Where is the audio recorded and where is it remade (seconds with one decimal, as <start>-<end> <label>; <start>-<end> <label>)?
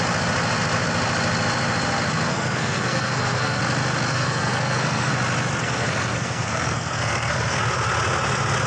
0.0-2.3 recorded; 2.3-3.6 remade; 3.6-4.1 recorded; 4.1-5.1 remade; 5.1-5.6 recorded; 5.6-7.6 remade; 7.6-8.7 recorded